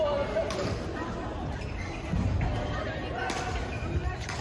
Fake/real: real